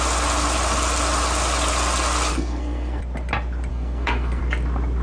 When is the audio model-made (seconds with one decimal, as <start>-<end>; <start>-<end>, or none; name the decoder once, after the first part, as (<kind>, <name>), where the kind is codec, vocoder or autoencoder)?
2.3-3.0 (codec, SNAC); 3.7-4.4